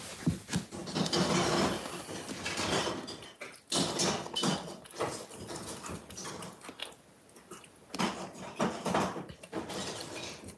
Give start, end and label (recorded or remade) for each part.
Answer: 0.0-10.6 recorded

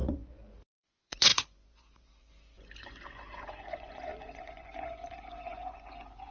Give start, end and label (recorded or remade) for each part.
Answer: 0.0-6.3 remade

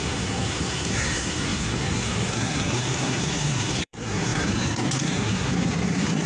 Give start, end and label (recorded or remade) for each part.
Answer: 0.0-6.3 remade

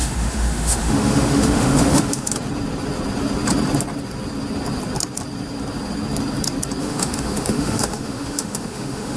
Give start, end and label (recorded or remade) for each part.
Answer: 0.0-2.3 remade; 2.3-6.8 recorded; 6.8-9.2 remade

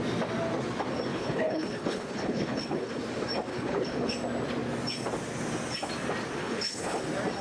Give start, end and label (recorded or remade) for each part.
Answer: 0.0-1.1 recorded; 1.1-3.0 remade; 3.0-3.5 recorded; 3.5-4.1 remade; 4.1-6.4 recorded; 6.4-7.0 remade; 7.0-7.4 recorded

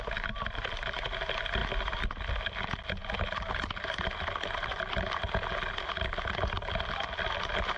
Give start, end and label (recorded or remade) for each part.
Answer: 0.0-7.8 recorded